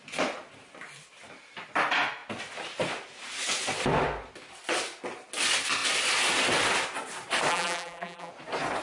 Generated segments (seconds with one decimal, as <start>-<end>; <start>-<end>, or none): 7.5-8.3